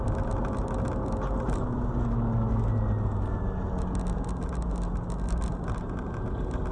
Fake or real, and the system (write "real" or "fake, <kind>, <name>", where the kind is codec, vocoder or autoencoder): real